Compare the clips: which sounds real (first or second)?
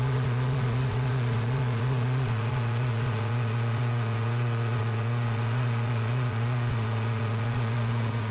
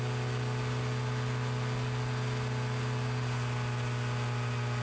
second